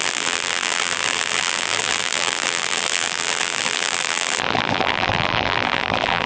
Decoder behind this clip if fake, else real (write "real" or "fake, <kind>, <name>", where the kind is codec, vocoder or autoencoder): fake, vocoder, BigVGAN v2